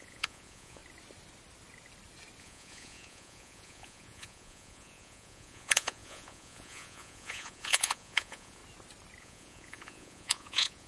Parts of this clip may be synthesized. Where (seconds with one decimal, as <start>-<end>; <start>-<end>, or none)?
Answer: 0.0-0.8; 2.4-8.6; 9.2-10.9